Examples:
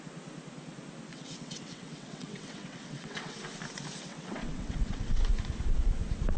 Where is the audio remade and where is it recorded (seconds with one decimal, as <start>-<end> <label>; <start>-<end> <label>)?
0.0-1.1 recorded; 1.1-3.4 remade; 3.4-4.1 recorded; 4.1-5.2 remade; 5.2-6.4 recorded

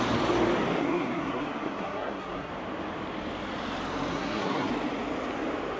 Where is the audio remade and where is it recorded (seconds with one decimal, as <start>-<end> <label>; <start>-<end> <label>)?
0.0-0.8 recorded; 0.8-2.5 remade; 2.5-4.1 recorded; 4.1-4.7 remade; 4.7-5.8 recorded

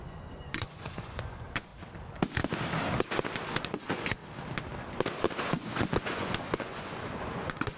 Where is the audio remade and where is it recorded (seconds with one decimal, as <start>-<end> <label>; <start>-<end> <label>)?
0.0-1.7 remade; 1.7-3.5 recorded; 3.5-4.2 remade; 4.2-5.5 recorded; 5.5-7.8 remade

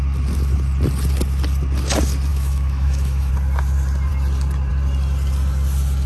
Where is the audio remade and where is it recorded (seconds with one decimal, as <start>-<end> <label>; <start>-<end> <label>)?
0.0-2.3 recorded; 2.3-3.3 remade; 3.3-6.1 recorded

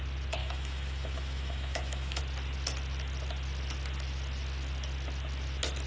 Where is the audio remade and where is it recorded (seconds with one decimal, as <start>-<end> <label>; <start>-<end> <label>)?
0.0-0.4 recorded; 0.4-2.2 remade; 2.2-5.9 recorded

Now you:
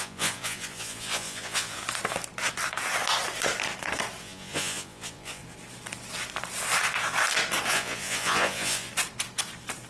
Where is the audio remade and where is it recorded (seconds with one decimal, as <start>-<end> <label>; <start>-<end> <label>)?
0.0-1.8 remade; 1.8-4.2 recorded; 4.2-5.4 remade; 5.4-7.7 recorded; 7.7-8.9 remade; 8.9-9.9 recorded

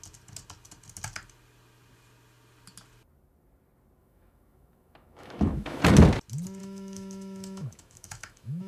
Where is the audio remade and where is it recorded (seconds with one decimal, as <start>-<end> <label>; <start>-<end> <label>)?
0.0-4.0 recorded; 4.0-5.8 remade; 5.8-6.6 recorded; 6.6-8.7 remade

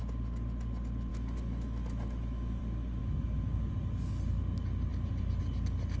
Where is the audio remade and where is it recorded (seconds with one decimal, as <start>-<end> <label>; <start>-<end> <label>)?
0.0-1.1 recorded; 1.1-2.6 remade; 2.6-3.0 recorded; 3.0-3.7 remade; 3.7-6.0 recorded